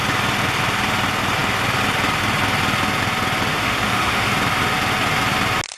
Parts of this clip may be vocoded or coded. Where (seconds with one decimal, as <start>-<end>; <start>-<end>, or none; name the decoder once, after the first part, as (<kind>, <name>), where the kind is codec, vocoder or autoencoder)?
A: 3.5-4.3 (autoencoder, DAC-VAE)